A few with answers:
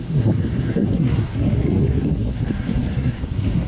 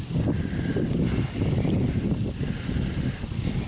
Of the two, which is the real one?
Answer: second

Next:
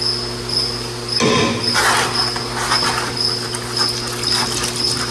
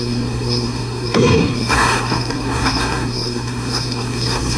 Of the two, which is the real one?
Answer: first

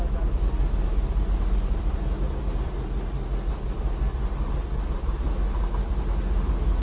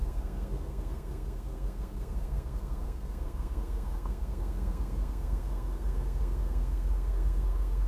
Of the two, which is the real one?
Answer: first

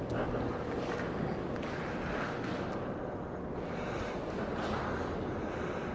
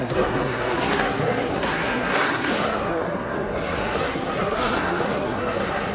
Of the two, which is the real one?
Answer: first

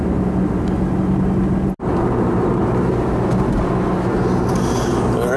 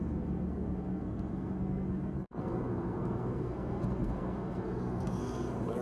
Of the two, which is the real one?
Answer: first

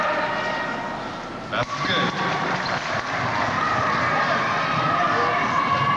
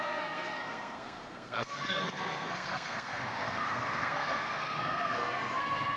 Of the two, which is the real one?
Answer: first